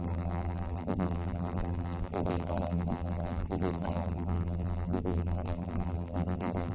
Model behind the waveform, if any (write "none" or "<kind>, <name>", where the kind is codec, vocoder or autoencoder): vocoder, BigVGAN v2